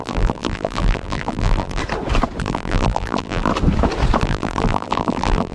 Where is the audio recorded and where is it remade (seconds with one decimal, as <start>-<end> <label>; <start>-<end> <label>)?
0.0-1.8 remade; 1.8-2.4 recorded; 2.4-3.5 remade; 3.5-4.2 recorded; 4.2-5.5 remade

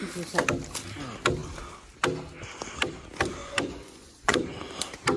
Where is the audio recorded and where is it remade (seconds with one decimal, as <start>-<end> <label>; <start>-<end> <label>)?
0.0-3.4 recorded; 3.4-4.7 remade; 4.7-5.2 recorded

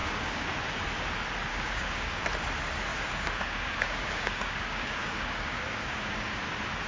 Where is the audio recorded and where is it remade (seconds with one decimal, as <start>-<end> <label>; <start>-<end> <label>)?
0.0-0.6 remade; 0.6-1.5 recorded; 1.5-2.2 remade; 2.2-2.9 recorded; 2.9-6.4 remade; 6.4-6.9 recorded

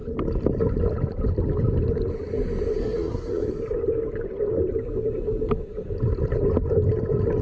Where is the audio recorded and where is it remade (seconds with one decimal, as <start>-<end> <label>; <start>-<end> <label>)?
0.0-2.8 recorded; 2.8-3.5 remade; 3.5-7.4 recorded

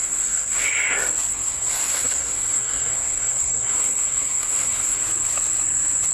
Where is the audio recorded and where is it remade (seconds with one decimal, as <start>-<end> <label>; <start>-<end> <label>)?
0.0-0.6 remade; 0.6-1.3 recorded; 1.3-5.0 remade; 5.0-6.1 recorded

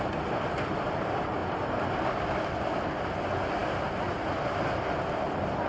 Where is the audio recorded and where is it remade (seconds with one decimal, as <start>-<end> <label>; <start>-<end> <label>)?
0.0-5.7 recorded

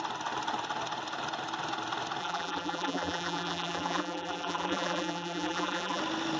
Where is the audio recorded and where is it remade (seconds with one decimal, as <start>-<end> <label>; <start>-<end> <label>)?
0.0-2.2 recorded; 2.2-6.0 remade; 6.0-6.4 recorded

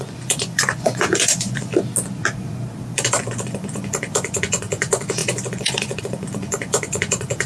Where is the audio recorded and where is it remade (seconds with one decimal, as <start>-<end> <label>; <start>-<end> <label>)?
0.0-1.7 remade; 1.7-3.0 recorded; 3.0-7.5 remade